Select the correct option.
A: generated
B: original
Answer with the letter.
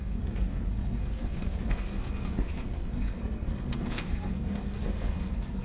A